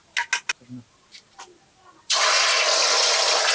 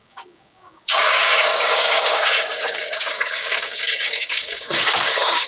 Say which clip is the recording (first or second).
first